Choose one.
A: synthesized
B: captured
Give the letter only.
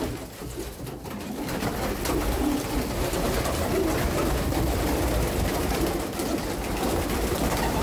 B